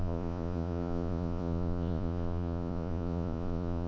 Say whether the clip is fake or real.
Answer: fake